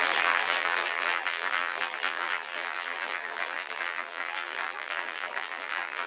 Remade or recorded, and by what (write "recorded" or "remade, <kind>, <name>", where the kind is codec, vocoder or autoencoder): remade, vocoder, BigVGAN v2